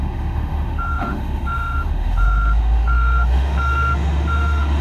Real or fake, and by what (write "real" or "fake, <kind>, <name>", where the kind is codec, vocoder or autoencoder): fake, autoencoder, DAC-VAE